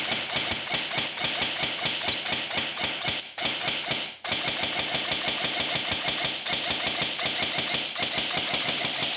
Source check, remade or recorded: recorded